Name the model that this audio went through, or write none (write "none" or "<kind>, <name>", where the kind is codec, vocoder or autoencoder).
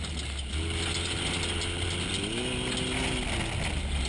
none